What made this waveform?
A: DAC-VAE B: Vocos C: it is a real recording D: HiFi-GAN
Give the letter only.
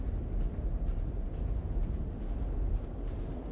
C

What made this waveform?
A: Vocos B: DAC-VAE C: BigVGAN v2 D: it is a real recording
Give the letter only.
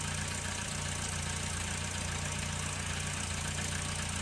D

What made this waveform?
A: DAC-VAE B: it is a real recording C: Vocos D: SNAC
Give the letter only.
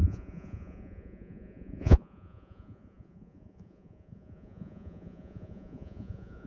C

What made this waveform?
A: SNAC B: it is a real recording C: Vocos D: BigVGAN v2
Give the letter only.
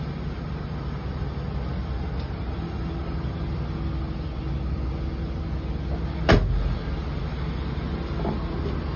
B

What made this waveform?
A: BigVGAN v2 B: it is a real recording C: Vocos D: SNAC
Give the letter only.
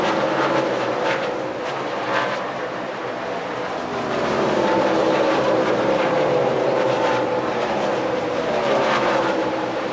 A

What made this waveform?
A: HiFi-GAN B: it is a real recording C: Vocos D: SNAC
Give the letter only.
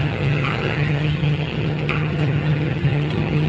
A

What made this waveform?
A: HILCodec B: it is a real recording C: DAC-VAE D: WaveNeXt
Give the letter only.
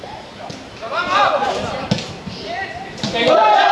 B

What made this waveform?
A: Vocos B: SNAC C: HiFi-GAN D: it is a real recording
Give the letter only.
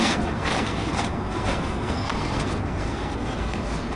B